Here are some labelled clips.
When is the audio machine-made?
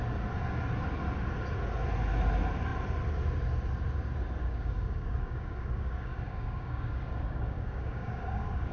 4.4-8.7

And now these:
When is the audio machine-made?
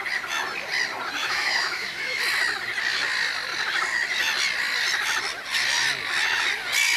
1.2-2.2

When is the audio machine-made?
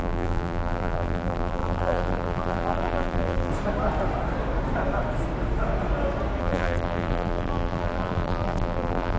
0.0-3.5; 6.4-9.2